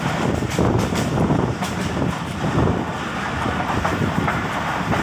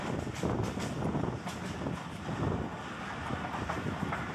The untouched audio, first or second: second